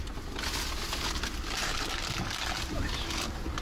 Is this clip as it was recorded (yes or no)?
yes